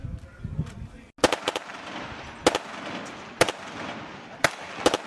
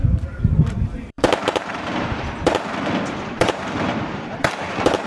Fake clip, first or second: second